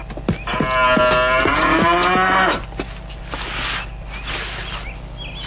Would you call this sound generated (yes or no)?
no